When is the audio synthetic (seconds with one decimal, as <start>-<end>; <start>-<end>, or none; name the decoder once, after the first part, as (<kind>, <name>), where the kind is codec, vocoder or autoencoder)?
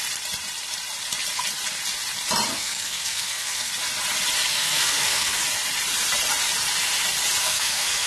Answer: 2.5-3.7 (codec, SNAC); 4.5-5.4; 7.4-8.1